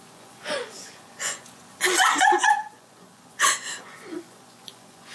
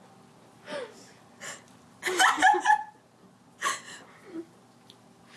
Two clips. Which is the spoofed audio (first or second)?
first